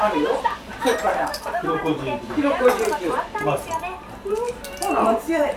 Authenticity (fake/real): fake